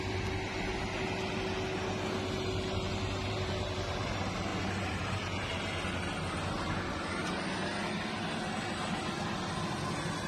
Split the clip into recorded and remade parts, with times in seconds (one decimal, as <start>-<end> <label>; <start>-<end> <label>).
0.0-10.3 recorded